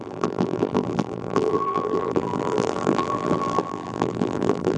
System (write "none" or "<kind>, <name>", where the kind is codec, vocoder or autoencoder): vocoder, BigVGAN v2